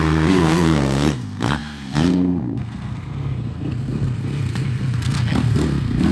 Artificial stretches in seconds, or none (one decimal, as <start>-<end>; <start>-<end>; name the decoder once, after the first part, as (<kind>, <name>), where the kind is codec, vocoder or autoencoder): 0.0-6.1 (codec, SNAC)